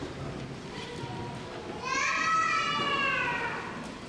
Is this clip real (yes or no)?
yes